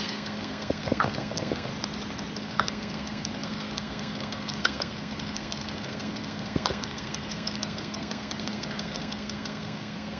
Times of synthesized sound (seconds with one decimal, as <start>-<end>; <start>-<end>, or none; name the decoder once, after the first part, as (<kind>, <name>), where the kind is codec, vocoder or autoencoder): 0.0-1.7 (codec, SNAC); 2.4-10.2